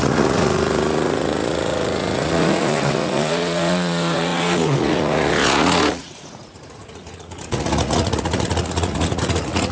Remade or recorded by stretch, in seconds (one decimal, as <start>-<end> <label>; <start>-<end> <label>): 0.0-9.7 remade